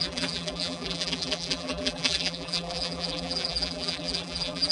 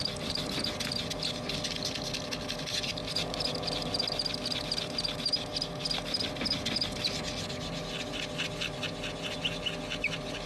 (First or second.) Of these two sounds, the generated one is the first